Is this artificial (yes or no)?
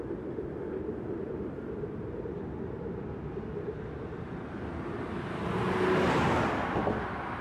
no